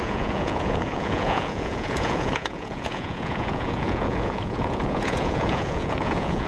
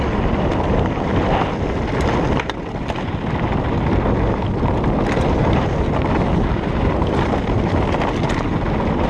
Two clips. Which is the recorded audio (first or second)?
second